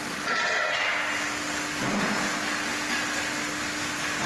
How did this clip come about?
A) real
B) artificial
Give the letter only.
A